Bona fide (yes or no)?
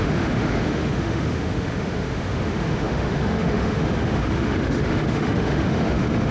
no